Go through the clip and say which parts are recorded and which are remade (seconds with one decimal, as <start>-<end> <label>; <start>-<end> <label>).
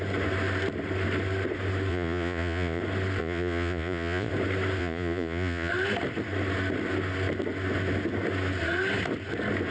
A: 0.0-1.9 recorded; 1.9-2.8 remade; 2.8-3.2 recorded; 3.2-4.3 remade; 4.3-4.8 recorded; 4.8-5.7 remade; 5.7-9.7 recorded